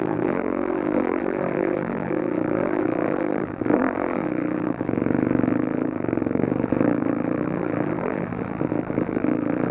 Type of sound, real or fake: fake